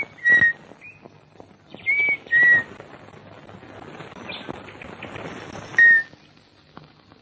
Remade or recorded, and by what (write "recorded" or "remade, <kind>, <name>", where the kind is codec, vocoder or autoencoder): recorded